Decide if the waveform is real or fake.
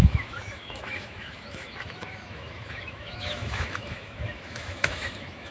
fake